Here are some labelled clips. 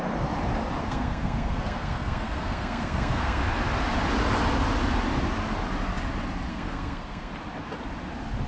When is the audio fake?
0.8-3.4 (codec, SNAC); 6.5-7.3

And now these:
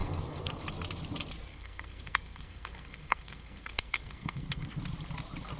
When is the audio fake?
0.0-0.6 (codec, SNAC); 1.5-4.8

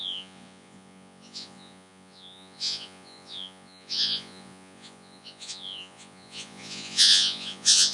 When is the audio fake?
0.0-7.9 (vocoder, Vocos)